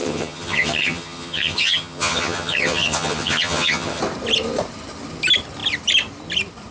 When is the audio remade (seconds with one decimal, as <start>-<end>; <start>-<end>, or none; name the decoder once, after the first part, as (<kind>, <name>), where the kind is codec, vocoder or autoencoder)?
0.0-4.0 (vocoder, HiFi-GAN)